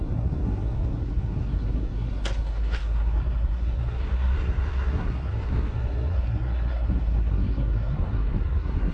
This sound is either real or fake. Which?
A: fake